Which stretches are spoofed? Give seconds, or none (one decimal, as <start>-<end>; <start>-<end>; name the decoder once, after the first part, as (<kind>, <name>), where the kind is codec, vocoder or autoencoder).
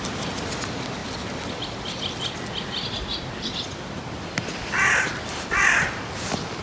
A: none